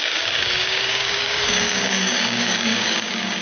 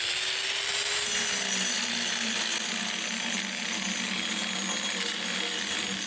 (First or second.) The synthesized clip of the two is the first